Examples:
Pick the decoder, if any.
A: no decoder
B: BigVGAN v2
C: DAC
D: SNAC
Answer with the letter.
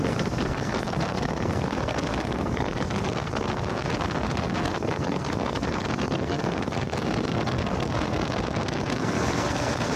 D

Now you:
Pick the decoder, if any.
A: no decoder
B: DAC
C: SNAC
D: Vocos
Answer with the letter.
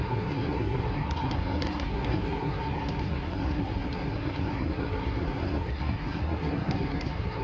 C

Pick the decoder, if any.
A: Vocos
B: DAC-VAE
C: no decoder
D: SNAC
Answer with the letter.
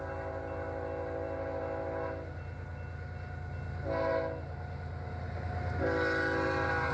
C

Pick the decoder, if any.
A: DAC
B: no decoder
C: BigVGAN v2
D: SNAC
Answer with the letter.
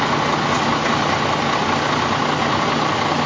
B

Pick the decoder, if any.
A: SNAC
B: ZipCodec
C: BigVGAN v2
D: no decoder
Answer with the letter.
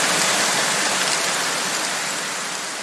D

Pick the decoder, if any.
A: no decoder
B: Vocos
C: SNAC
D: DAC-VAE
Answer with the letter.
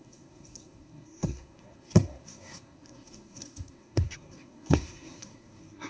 C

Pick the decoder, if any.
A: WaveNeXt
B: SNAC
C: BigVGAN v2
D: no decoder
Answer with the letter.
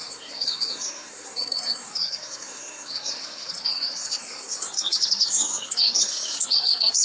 B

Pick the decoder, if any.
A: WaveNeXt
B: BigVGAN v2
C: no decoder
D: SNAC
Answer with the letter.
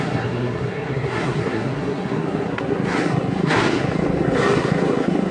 D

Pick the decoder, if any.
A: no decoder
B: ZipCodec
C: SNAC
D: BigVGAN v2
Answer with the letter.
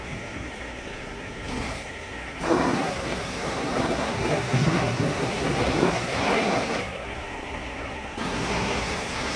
C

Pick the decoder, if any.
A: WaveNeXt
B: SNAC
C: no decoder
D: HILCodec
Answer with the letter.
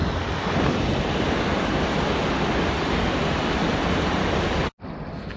C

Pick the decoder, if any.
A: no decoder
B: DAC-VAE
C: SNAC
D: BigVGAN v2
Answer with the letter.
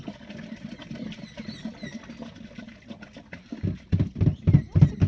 A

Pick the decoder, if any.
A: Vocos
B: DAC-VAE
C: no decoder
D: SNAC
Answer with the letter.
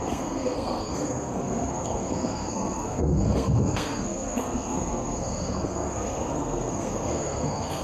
D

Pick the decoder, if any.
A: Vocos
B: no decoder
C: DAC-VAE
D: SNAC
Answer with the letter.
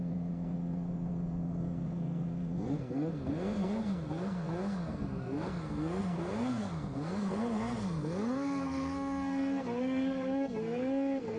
D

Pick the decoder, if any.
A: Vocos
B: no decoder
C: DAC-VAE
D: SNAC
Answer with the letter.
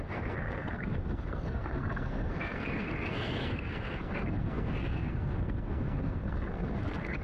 D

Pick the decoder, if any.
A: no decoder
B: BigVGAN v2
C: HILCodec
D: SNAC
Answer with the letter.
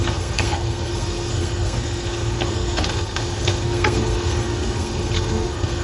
D